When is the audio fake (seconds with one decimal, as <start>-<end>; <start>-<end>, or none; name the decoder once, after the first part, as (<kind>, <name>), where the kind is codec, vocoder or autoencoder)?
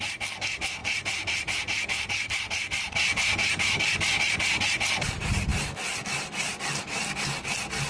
0.8-4.2 (vocoder, BigVGAN v2)